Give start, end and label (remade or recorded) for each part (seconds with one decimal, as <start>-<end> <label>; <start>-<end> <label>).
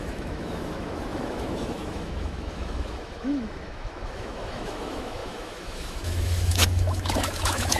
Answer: 0.0-7.8 remade